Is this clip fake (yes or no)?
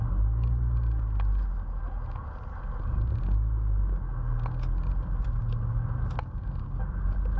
no